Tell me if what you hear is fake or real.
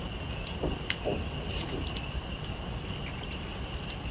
real